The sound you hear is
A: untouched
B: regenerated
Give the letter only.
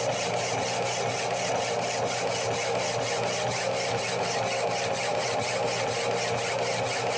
A